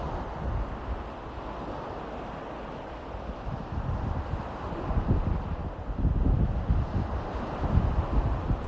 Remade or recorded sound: recorded